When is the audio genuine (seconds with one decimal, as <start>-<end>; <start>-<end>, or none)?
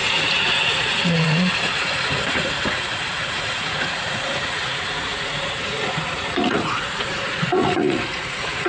none